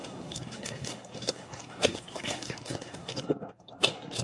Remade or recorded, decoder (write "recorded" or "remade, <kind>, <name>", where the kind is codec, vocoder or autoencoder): remade, codec, SNAC